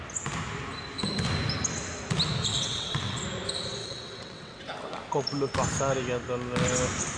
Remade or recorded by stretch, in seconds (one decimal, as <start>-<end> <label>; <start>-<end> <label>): 0.0-2.5 recorded; 2.5-3.2 remade; 3.2-3.8 recorded; 3.8-4.6 remade; 4.6-7.2 recorded